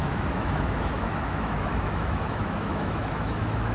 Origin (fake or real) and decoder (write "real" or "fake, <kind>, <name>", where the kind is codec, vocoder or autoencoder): fake, autoencoder, DAC-VAE